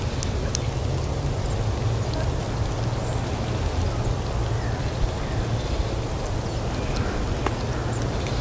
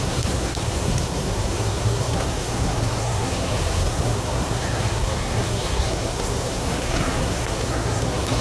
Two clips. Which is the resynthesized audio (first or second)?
second